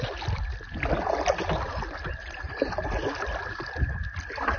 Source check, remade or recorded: recorded